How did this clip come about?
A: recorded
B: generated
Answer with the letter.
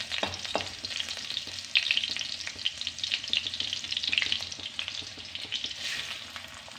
A